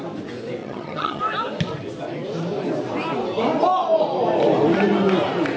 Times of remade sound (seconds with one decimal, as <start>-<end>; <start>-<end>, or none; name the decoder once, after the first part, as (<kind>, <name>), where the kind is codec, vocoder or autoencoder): 0.6-1.2 (vocoder, HiFi-GAN)

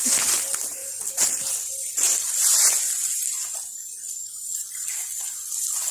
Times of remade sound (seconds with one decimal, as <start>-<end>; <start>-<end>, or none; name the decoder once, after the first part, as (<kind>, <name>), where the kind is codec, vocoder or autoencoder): none

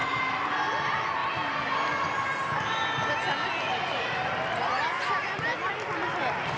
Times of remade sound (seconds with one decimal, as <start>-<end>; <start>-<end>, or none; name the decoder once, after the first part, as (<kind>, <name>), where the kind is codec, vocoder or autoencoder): 0.0-0.5 (vocoder, BigVGAN v2)

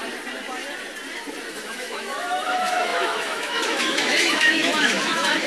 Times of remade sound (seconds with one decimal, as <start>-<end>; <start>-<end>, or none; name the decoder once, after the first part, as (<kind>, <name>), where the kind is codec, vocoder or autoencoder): 1.5-5.5 (autoencoder, DAC-VAE)

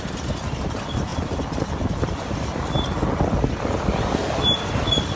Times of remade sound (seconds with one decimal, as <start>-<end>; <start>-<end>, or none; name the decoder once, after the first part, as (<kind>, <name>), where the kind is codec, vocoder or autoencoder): none

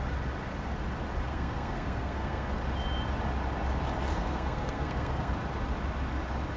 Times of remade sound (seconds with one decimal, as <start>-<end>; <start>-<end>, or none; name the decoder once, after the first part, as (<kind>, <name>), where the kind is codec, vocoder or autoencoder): 1.3-2.5 (codec, SNAC); 4.1-5.3

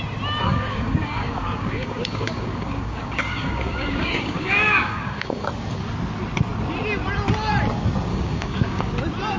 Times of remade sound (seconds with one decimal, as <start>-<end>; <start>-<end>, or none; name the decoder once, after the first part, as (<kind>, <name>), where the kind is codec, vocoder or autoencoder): 0.4-5.5 (codec, DAC); 8.1-8.9